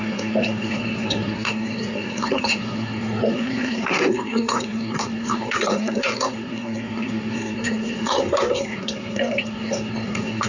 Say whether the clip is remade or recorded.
remade